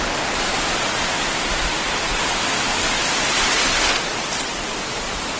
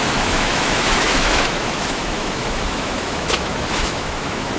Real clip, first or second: first